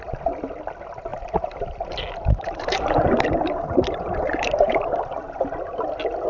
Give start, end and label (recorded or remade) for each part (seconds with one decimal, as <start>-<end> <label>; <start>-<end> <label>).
0.0-1.1 recorded; 1.1-4.9 remade; 4.9-6.3 recorded